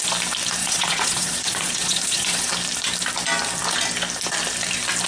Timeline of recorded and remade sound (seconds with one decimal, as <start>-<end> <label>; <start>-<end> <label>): 0.0-0.6 recorded; 0.6-2.5 remade; 2.5-5.1 recorded